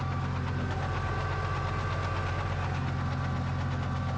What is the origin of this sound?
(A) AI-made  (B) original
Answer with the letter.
B